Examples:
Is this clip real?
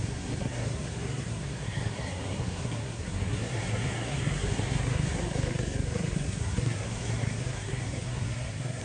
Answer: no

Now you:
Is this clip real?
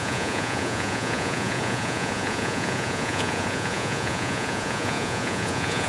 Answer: no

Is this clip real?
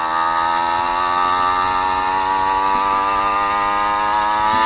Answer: yes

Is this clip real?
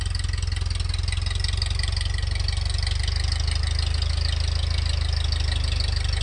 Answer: yes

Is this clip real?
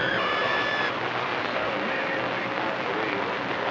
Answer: yes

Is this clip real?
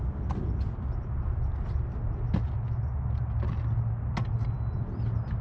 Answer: yes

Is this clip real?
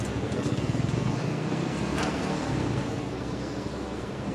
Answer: no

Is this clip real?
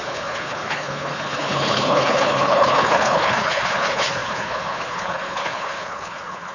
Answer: no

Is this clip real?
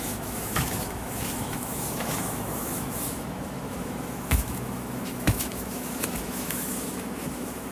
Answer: no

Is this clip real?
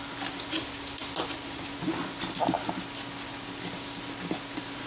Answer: yes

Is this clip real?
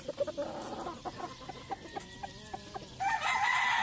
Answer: yes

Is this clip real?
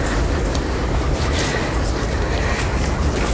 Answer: no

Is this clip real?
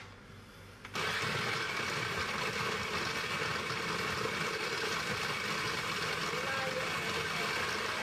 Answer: yes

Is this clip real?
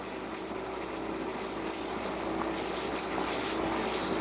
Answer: yes